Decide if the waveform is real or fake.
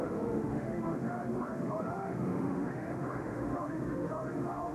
fake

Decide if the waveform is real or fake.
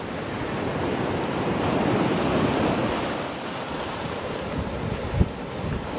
fake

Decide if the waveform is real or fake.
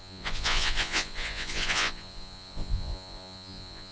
fake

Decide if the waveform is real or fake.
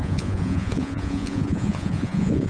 fake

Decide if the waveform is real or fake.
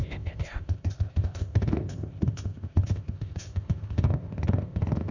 fake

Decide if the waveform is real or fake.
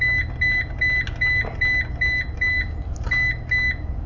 real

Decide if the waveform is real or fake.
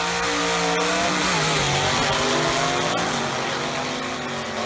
real